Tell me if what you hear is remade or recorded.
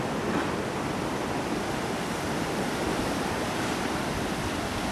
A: remade